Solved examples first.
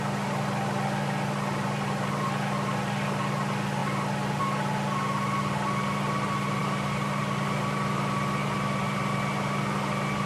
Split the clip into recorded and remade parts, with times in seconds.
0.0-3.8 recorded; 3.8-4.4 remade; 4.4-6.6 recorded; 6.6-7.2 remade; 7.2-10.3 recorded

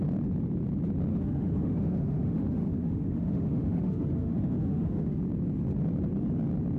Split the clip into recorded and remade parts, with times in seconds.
0.0-1.1 recorded; 1.1-5.2 remade; 5.2-6.8 recorded